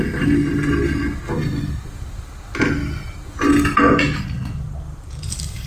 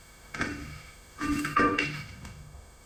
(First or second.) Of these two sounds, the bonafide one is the first